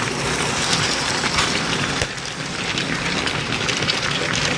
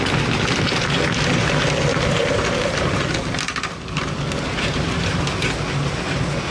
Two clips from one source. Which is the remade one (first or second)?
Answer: first